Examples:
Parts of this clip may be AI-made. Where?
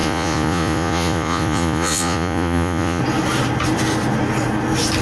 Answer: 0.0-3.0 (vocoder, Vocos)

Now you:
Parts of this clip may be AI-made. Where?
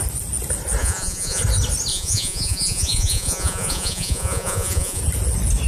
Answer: 0.8-1.4 (vocoder, Vocos); 1.9-5.0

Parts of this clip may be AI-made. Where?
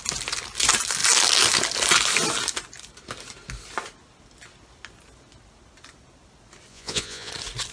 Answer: 6.7-7.3 (vocoder, Vocos)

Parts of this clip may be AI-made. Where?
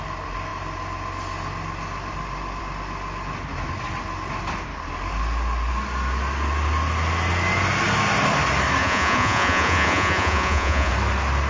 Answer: 8.8-10.9 (vocoder, Vocos)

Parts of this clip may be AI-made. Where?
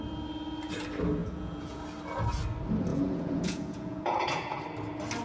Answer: 1.2-1.8 (vocoder, Vocos); 2.9-4.6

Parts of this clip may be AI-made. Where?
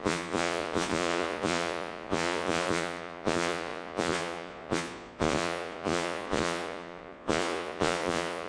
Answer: 0.0-8.5 (vocoder, Vocos)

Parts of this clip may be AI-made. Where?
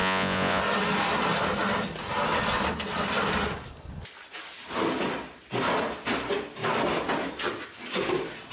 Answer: 0.0-0.6 (vocoder, Vocos)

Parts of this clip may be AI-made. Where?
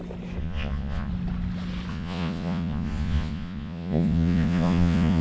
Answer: 0.4-1.1 (vocoder, Vocos); 1.9-5.2